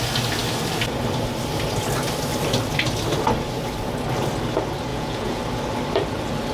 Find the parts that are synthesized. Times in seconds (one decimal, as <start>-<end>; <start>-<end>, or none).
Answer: 4.9-5.4